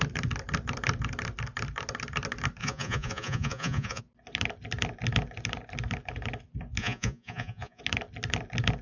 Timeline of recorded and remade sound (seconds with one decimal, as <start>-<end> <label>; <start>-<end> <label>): 0.0-2.6 recorded; 2.6-4.0 remade; 4.0-6.8 recorded; 6.8-7.8 remade; 7.8-8.8 recorded